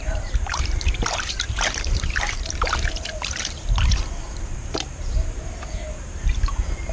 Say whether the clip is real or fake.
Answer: fake